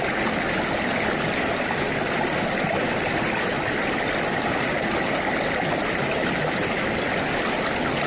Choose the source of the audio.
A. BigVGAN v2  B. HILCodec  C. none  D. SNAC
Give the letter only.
C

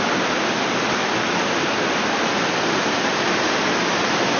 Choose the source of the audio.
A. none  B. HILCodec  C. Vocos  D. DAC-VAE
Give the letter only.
A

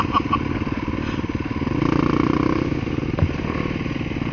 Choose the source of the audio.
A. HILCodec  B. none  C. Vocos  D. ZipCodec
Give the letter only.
B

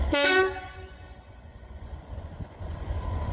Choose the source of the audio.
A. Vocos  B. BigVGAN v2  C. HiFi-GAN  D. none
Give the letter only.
A